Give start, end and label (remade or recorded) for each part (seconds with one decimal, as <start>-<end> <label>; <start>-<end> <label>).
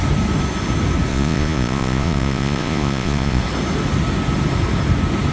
0.0-1.1 recorded; 1.1-3.4 remade; 3.4-5.3 recorded